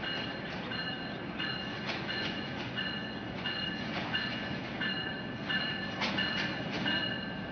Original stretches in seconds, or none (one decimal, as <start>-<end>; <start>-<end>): 0.0-1.6; 4.6-7.5